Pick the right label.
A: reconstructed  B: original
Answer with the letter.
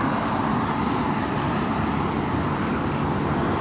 B